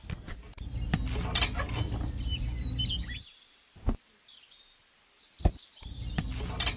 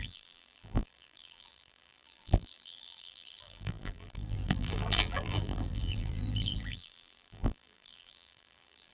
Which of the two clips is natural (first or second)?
first